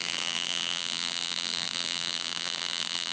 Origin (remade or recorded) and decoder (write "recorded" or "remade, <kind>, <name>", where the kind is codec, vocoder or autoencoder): remade, vocoder, BigVGAN v2